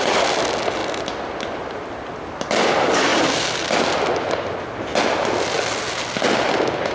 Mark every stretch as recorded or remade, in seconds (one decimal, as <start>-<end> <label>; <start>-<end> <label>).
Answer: 0.0-6.9 recorded